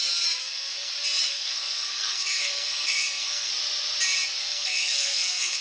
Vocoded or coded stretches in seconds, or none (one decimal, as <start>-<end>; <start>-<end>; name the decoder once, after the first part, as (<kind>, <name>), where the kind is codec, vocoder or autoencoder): 0.4-0.9 (codec, SNAC); 1.3-3.5; 4.4-5.6